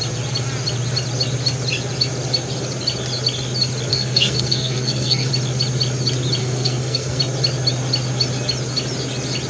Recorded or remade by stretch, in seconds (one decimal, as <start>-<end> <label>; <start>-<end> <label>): 0.0-3.9 recorded; 3.9-5.3 remade; 5.3-6.4 recorded; 6.4-7.2 remade; 7.2-9.5 recorded